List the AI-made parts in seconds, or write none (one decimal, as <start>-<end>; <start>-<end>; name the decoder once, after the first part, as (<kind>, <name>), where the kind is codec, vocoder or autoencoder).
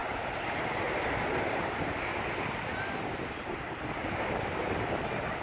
none